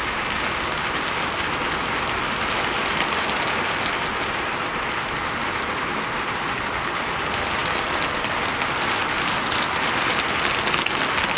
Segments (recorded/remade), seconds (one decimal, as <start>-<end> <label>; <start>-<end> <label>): 0.0-11.4 recorded